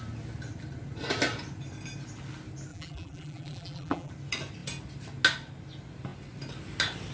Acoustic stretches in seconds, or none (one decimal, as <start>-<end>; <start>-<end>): 0.0-2.7; 4.1-7.1